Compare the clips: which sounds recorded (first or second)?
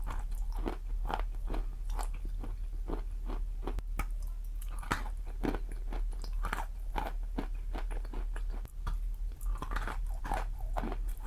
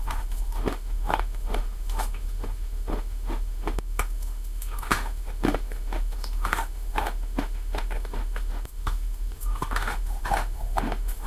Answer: first